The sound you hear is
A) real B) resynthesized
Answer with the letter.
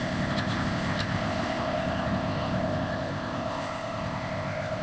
B